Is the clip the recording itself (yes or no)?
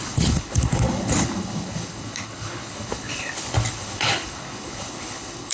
no